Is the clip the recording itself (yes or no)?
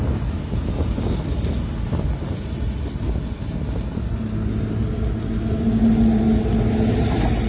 yes